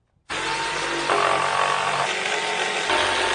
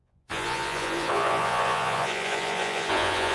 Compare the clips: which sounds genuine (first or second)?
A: first